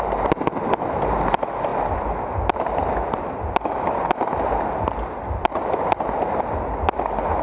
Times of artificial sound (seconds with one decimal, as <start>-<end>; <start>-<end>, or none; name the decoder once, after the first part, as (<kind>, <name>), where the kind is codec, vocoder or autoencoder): none